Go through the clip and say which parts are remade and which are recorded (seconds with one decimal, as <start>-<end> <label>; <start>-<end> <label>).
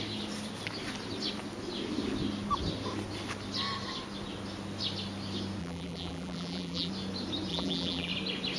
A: 0.0-5.6 recorded; 5.6-6.9 remade; 6.9-7.5 recorded; 7.5-8.1 remade; 8.1-8.6 recorded